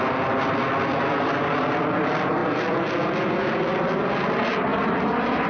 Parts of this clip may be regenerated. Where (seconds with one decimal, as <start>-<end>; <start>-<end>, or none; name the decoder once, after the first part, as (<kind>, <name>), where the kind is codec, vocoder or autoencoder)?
none